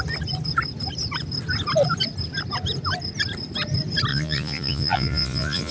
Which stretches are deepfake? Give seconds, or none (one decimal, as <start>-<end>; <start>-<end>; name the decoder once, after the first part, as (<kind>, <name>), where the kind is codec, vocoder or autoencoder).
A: 4.1-5.7 (vocoder, Vocos)